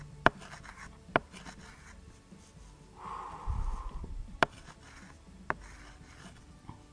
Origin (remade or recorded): recorded